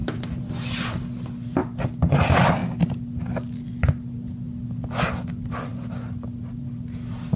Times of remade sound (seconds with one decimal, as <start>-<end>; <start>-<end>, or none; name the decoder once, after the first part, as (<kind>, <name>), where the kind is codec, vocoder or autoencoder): none